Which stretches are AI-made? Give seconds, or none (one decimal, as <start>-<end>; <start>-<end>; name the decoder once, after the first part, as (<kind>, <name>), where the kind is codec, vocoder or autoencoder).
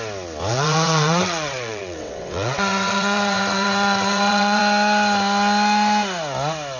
0.5-4.6 (vocoder, WaveNeXt)